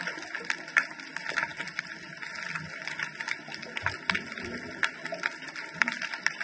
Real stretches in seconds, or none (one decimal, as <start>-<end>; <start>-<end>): 0.0-6.4